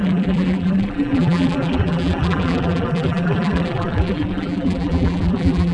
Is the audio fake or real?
fake